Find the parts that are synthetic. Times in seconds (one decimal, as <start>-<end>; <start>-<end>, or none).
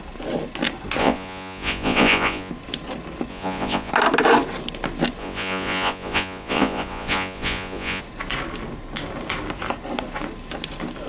1.0-2.5; 3.3-3.9; 5.2-8.0